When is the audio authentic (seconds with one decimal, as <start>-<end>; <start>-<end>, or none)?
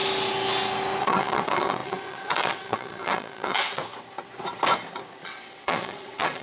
0.0-1.0; 3.8-5.2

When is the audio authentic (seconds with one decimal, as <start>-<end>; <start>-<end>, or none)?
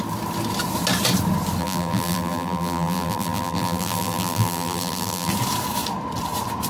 0.0-1.6; 5.3-6.7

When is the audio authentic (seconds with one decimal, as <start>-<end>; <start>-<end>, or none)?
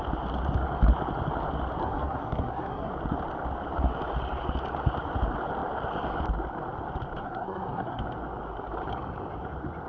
0.0-1.8; 2.9-7.2; 8.0-9.9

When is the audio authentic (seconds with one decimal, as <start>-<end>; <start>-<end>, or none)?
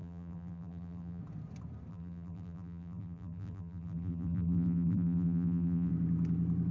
1.2-1.9; 5.9-6.7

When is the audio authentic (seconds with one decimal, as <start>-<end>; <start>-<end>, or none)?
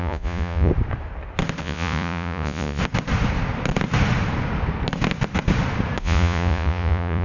0.7-1.6; 2.8-6.0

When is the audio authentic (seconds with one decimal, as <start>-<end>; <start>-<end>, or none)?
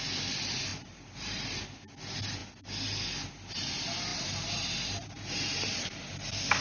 0.0-0.7; 1.6-4.1; 6.1-6.6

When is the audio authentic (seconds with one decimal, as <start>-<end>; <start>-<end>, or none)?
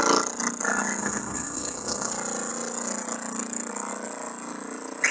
0.0-1.0; 2.1-5.1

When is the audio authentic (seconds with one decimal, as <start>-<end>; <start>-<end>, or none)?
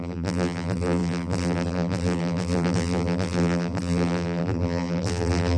none